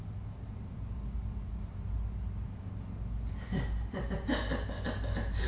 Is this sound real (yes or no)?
yes